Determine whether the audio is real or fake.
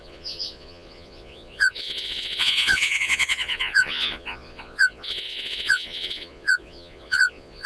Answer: fake